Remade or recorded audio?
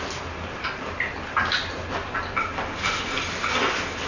recorded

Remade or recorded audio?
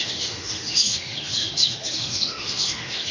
remade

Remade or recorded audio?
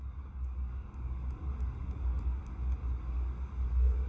remade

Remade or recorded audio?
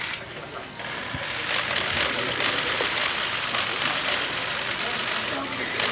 recorded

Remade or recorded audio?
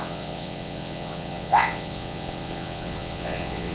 remade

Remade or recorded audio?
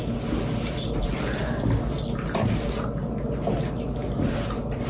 recorded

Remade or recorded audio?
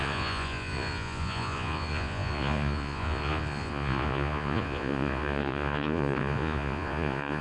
remade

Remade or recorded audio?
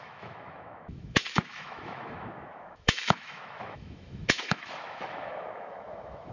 remade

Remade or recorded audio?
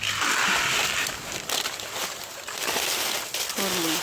remade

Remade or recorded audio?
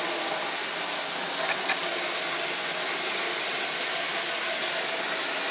recorded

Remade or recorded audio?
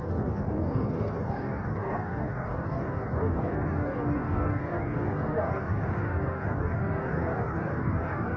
remade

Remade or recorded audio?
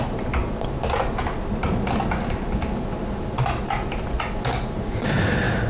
recorded